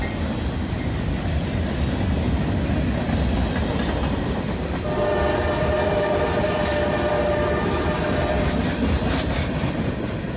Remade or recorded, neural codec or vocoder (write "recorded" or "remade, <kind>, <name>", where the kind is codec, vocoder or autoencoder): recorded